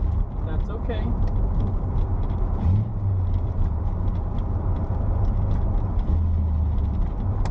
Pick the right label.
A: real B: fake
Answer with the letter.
A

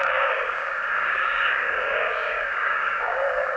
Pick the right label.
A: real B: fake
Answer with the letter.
B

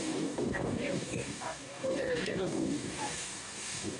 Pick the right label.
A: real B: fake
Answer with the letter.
B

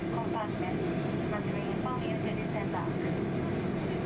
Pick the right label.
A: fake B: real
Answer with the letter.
B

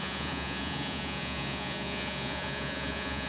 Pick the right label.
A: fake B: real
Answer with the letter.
A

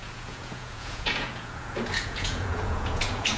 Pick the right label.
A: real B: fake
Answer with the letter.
B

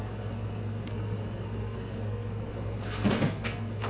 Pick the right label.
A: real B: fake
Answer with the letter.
B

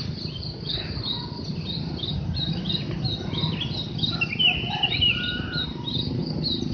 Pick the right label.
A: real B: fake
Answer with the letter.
A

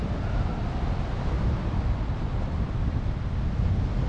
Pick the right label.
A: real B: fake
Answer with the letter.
A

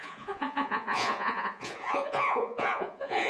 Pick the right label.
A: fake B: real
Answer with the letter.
A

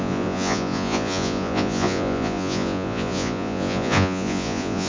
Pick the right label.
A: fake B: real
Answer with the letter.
A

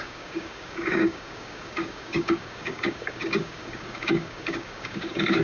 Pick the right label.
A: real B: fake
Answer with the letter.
B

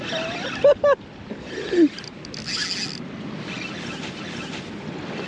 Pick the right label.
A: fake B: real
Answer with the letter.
B